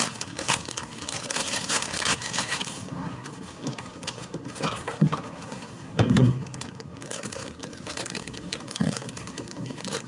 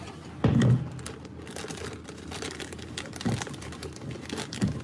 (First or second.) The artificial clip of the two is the first